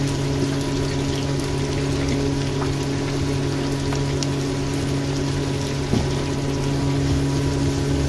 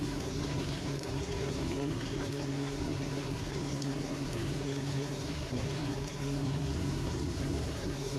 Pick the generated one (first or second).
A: second